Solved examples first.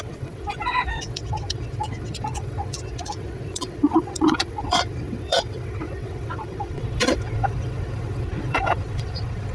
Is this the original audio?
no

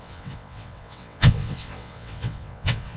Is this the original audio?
no